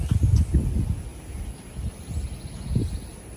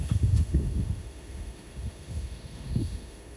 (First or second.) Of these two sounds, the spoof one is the second